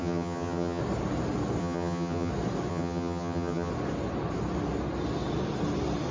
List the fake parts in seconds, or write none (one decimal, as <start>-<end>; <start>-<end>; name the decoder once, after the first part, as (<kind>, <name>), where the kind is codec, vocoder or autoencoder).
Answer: 0.0-0.8 (vocoder, HiFi-GAN); 1.6-2.3; 2.7-3.7